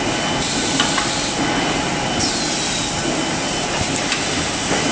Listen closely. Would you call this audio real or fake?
real